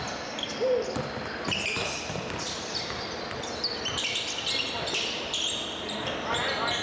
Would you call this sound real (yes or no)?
yes